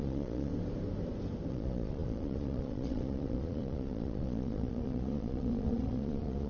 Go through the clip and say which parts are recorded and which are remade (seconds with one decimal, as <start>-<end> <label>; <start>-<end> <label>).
0.0-0.5 remade; 0.5-1.5 recorded; 1.5-6.5 remade